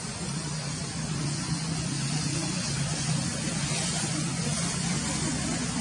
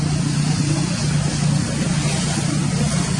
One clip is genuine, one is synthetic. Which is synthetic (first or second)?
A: first